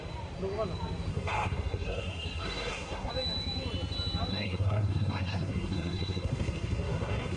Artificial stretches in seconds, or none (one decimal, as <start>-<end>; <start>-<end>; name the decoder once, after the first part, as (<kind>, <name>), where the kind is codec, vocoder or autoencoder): 1.1-3.1 (codec, SNAC); 4.3-7.4